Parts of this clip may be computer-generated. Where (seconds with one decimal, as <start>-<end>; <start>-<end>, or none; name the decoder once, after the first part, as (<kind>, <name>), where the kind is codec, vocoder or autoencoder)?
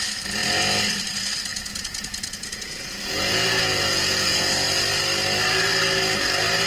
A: 1.5-4.5 (vocoder, Vocos)